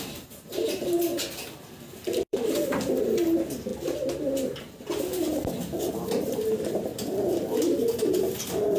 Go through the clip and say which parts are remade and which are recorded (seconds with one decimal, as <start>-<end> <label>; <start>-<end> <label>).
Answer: 0.0-1.1 remade; 1.1-2.3 recorded; 2.3-3.7 remade; 3.7-5.8 recorded; 5.8-6.9 remade; 6.9-8.1 recorded; 8.1-8.8 remade